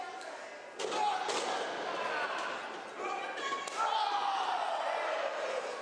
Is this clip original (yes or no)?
yes